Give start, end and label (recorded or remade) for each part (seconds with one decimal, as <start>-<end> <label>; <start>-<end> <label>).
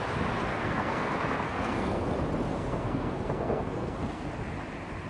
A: 0.0-0.5 recorded; 0.5-2.1 remade; 2.1-2.5 recorded; 2.5-4.3 remade; 4.3-5.1 recorded